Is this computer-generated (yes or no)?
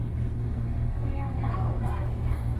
yes